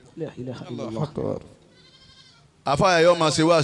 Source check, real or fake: real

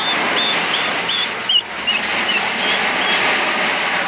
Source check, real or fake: real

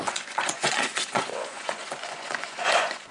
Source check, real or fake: fake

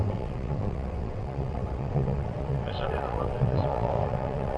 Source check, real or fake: fake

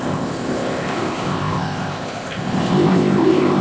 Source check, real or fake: fake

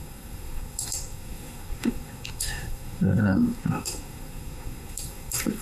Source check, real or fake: fake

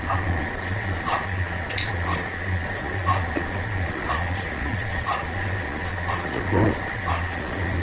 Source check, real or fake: fake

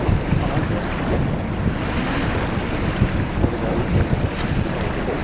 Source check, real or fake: real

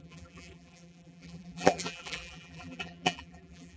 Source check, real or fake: fake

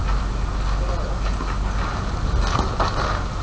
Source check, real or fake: real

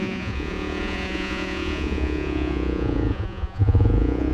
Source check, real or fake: fake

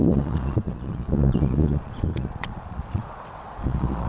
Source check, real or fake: fake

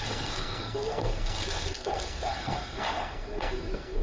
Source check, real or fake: fake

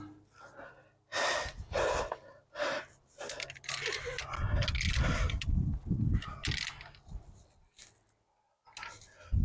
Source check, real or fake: real